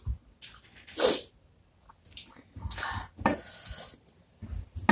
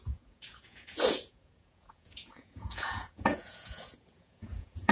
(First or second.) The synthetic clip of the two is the second